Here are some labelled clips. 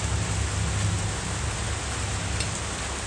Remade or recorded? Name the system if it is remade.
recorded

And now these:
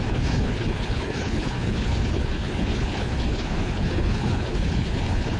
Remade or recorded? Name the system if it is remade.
remade, codec, HILCodec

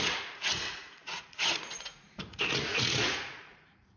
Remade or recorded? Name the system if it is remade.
remade, vocoder, Vocos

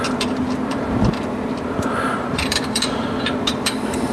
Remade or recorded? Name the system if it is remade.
remade, vocoder, BigVGAN v2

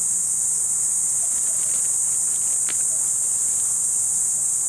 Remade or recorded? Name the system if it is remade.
recorded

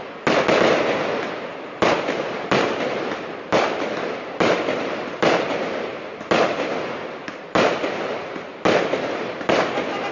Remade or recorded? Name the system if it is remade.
recorded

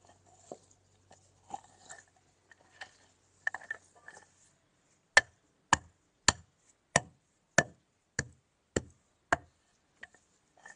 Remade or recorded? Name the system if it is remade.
recorded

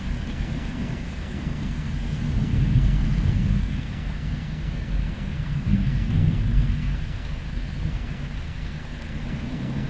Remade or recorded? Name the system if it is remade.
remade, codec, SNAC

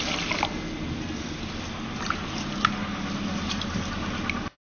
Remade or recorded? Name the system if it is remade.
recorded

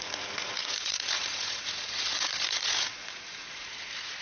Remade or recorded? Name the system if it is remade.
remade, vocoder, Vocos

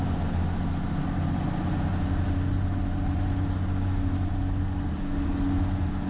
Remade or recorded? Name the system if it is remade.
recorded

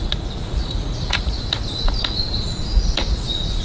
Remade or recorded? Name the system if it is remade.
remade, vocoder, Vocos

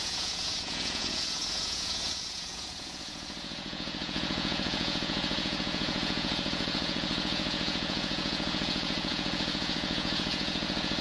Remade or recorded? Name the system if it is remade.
remade, vocoder, Vocos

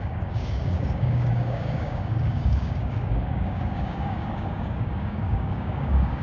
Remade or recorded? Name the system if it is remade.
remade, codec, DAC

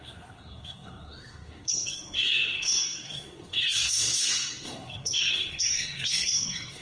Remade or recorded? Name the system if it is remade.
remade, codec, SNAC